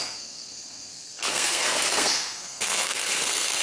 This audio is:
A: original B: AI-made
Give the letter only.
B